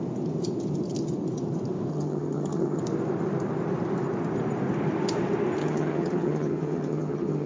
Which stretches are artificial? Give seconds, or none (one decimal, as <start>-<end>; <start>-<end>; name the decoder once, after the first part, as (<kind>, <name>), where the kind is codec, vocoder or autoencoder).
1.9-2.8 (vocoder, HiFi-GAN); 5.6-7.5